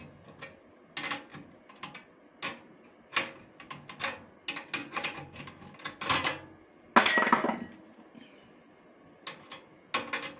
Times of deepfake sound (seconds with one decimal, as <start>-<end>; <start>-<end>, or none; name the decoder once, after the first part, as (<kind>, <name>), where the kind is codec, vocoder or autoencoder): 4.8-5.4 (vocoder, Vocos)